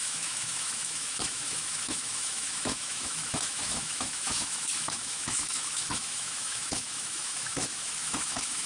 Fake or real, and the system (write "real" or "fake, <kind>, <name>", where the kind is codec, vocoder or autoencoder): fake, autoencoder, DAC-VAE